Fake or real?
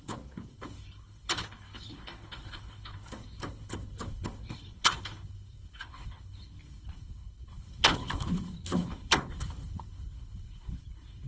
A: fake